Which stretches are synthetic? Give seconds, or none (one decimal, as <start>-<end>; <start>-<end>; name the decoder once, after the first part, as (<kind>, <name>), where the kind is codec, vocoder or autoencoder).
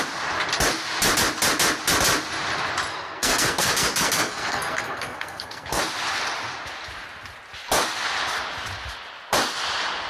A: 2.9-5.8 (codec, SNAC)